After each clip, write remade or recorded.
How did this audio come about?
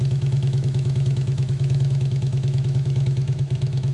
remade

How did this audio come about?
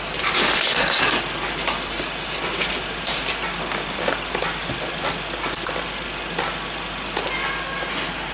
recorded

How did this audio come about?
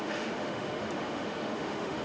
remade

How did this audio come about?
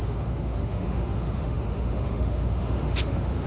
remade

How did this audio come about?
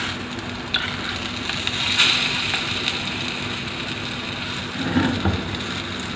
recorded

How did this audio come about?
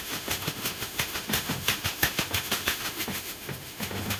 remade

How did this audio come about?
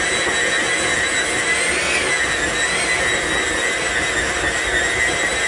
recorded